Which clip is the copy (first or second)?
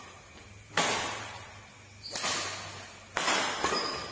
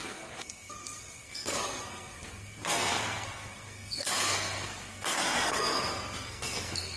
second